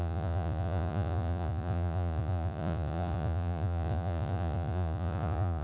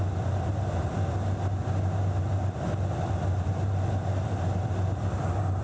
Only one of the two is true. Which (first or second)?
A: second